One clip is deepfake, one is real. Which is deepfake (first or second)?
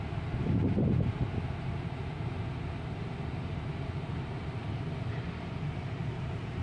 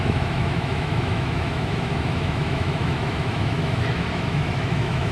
second